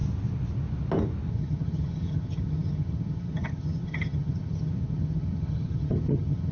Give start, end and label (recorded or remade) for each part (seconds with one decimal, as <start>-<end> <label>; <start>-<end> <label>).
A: 0.0-1.3 recorded; 1.3-6.5 remade